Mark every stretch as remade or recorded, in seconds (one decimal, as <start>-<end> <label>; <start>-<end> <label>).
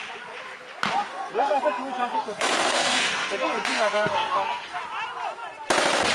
0.0-1.1 recorded; 1.1-4.8 remade; 4.8-6.1 recorded